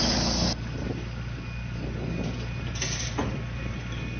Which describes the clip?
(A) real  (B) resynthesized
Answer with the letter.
A